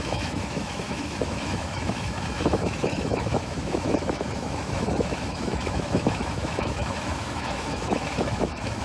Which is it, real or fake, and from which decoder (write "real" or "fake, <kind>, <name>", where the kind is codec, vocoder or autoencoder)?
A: fake, autoencoder, DAC-VAE